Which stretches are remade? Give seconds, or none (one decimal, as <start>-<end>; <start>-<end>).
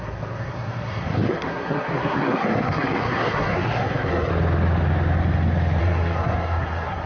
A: 0.0-4.3; 5.8-7.1